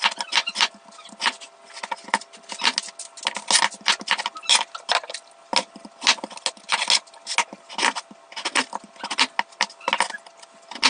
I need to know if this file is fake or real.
real